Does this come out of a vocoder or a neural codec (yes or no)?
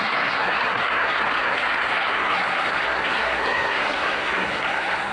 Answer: yes